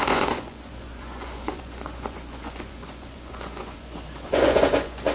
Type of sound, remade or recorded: remade